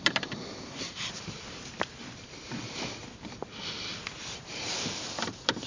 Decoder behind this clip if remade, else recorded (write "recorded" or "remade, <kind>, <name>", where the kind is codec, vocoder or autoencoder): remade, vocoder, BigVGAN v2